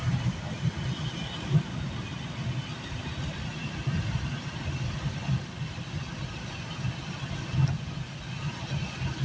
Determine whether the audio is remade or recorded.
recorded